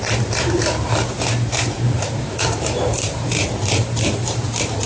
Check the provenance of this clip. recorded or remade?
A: remade